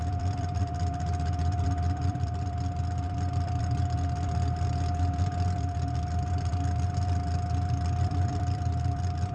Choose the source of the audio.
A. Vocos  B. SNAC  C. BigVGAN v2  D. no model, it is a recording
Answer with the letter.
C